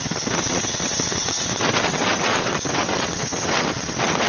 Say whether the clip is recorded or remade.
remade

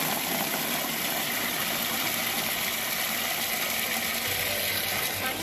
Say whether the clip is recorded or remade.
recorded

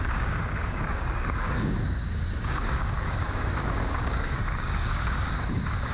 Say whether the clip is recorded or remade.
remade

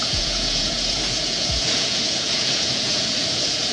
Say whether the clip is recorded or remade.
remade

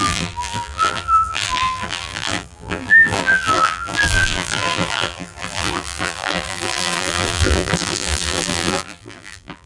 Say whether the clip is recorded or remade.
remade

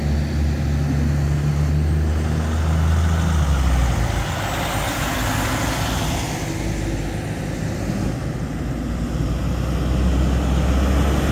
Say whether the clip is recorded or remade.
recorded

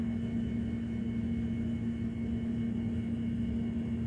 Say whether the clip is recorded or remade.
recorded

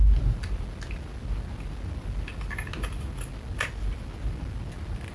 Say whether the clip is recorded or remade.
recorded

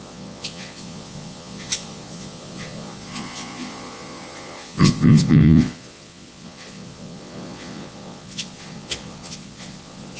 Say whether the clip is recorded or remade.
remade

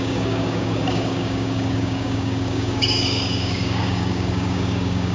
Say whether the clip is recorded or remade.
remade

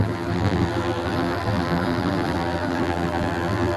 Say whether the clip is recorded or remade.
remade